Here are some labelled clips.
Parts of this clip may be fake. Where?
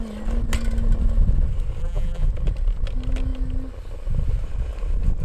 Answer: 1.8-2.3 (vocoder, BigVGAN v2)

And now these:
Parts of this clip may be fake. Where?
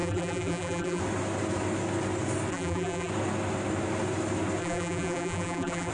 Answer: 0.0-1.0 (vocoder, BigVGAN v2); 2.5-3.1; 4.6-5.9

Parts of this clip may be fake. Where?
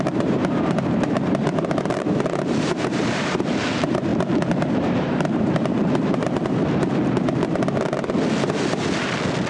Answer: 0.0-4.1 (vocoder, BigVGAN v2); 4.6-6.6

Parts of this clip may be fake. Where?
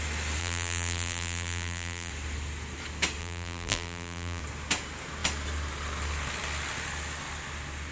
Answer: 0.4-2.1 (vocoder, BigVGAN v2); 3.2-4.4